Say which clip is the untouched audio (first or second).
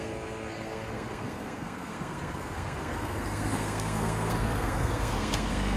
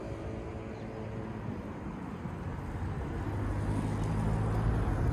second